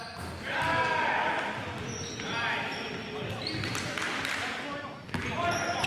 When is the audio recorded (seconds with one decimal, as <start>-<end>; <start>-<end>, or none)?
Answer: 0.0-5.9